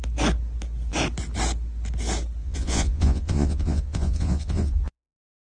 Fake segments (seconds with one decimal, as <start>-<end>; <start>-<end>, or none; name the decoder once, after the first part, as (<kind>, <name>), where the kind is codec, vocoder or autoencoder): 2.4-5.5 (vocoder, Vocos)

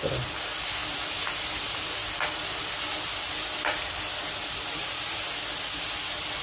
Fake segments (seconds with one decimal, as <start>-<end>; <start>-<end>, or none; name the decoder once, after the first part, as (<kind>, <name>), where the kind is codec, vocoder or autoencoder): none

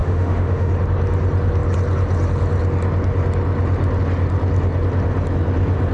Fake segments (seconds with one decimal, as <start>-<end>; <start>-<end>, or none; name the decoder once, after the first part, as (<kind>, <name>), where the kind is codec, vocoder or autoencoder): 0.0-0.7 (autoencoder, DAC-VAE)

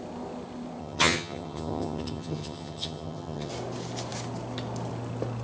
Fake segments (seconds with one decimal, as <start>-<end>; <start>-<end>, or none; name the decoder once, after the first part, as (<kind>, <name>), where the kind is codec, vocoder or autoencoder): 0.8-3.5 (vocoder, HiFi-GAN)

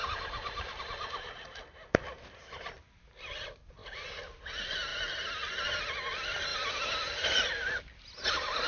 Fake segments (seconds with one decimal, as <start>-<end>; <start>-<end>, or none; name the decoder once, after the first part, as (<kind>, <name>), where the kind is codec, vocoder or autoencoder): 0.0-0.8 (vocoder, BigVGAN v2); 3.8-4.4; 6.5-7.5